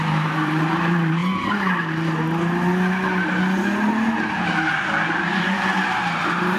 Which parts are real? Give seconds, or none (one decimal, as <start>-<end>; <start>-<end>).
1.2-5.2